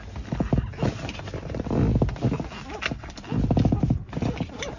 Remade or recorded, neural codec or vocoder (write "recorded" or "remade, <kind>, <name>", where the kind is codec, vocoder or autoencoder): remade, vocoder, BigVGAN v2